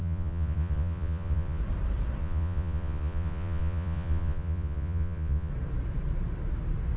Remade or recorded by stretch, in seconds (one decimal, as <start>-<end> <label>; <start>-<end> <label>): 0.0-1.6 remade; 1.6-2.2 recorded; 2.2-5.5 remade; 5.5-7.0 recorded